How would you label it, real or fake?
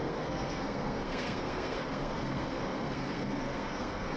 fake